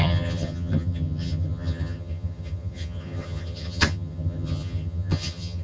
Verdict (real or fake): fake